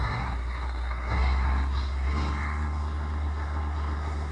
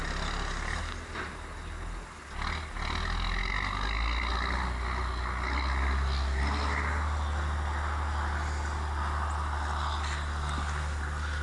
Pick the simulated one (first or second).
first